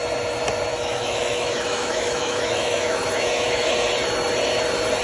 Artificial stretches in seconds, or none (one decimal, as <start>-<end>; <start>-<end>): 0.7-3.7